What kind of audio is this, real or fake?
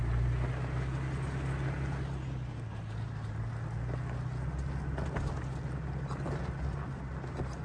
real